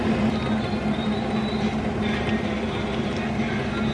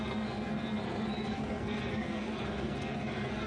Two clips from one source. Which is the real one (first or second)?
first